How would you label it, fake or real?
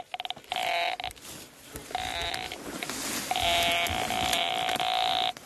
real